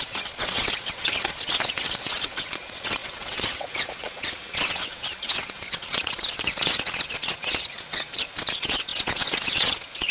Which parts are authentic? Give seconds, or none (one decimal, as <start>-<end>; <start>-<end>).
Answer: none

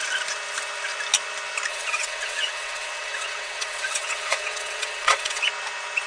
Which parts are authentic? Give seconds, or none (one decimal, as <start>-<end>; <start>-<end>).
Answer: 0.0-1.7; 5.4-6.1